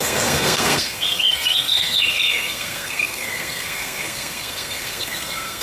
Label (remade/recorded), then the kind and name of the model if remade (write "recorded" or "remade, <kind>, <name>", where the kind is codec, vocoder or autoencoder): remade, codec, SNAC